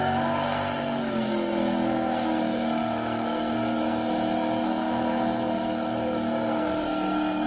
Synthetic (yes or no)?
yes